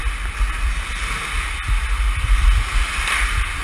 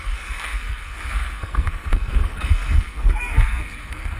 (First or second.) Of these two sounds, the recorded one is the first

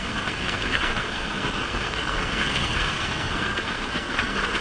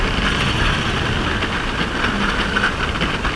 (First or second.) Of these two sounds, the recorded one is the second